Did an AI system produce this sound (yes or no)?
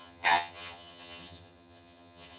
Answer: yes